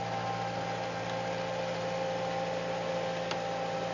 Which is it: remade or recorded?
recorded